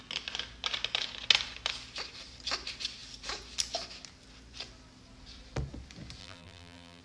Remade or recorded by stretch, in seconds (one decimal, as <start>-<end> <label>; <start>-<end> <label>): 0.0-6.2 recorded; 6.2-7.0 remade